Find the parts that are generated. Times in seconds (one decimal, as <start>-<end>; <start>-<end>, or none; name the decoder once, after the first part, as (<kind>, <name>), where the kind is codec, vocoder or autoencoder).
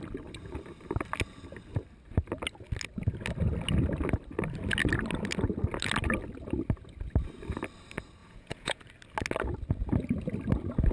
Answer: 8.2-8.8 (vocoder, Vocos)